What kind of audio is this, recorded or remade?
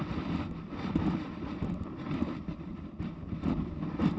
remade